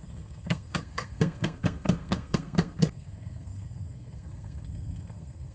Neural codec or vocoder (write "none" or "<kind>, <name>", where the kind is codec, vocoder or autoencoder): codec, SNAC